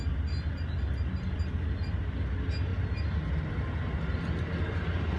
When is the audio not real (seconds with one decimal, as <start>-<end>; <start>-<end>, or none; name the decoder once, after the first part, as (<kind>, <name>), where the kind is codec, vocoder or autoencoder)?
none